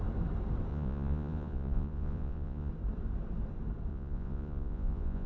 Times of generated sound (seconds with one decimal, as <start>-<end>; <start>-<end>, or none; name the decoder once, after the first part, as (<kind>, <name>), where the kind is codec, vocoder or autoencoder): 0.7-2.7 (vocoder, Vocos); 3.9-5.3